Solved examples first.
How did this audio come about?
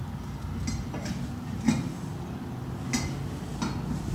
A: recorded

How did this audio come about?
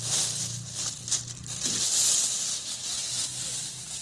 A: recorded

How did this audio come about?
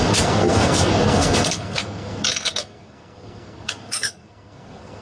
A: remade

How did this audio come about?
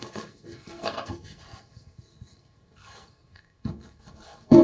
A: remade